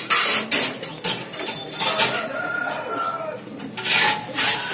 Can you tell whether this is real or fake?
real